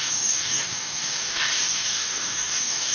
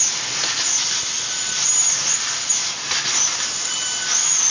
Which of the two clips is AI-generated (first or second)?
first